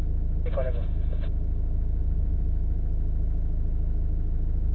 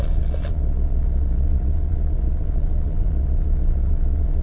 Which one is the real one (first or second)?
first